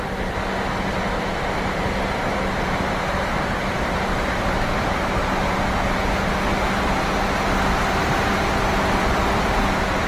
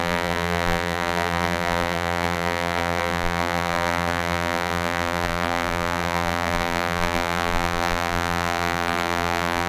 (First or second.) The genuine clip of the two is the first